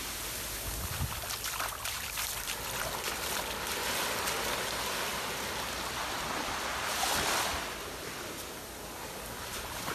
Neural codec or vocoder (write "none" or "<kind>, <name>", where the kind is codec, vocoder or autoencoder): none